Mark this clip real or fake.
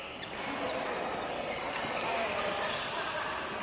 real